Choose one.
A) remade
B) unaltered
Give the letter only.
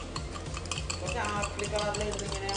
B